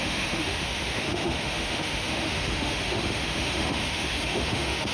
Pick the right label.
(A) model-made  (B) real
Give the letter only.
A